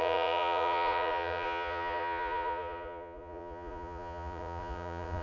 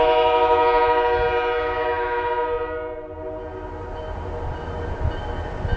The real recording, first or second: second